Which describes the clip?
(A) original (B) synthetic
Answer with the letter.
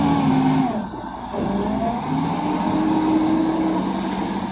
A